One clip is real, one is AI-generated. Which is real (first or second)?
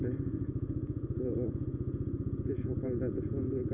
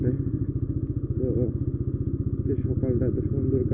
second